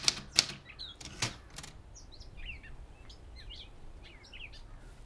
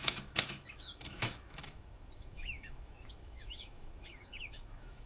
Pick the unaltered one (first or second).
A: first